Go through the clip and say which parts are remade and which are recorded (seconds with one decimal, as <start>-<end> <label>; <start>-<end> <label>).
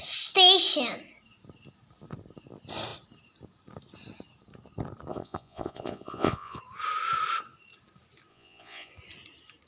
0.0-5.1 recorded; 5.1-6.6 remade; 6.6-8.3 recorded; 8.3-8.9 remade; 8.9-9.7 recorded